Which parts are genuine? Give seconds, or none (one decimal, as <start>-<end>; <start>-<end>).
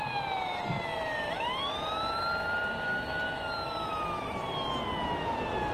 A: 0.0-5.7